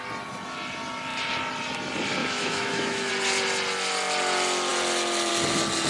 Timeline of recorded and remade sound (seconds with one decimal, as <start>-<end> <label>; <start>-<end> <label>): 0.0-2.2 recorded; 2.2-3.1 remade; 3.1-5.9 recorded